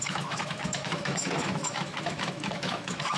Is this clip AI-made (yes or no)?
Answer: yes